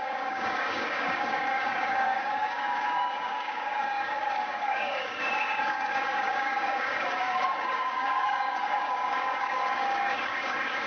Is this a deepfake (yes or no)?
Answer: yes